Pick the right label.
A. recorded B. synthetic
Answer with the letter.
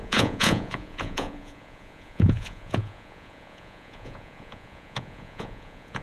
B